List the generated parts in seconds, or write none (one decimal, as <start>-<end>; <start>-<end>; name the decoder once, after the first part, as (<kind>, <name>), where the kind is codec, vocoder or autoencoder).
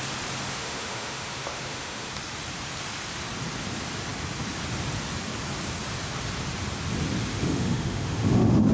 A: 0.5-2.1 (autoencoder, DAC-VAE); 7.3-8.7